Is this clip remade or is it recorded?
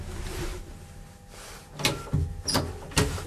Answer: recorded